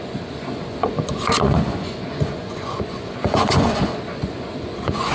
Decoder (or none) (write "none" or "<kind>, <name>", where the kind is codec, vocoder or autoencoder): vocoder, Vocos